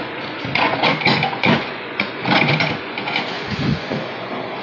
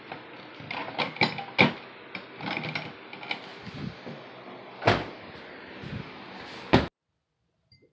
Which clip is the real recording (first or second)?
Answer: second